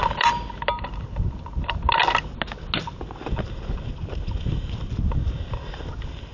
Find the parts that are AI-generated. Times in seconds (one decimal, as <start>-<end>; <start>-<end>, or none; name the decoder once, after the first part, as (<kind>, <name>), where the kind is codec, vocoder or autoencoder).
none